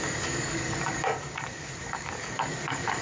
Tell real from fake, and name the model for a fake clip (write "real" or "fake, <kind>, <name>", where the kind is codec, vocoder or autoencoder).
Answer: fake, codec, DAC